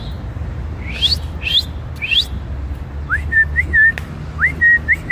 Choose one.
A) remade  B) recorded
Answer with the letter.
B